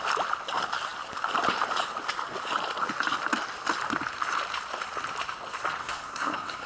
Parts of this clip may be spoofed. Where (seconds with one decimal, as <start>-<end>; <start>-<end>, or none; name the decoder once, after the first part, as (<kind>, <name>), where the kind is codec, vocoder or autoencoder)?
5.8-6.7 (codec, SNAC)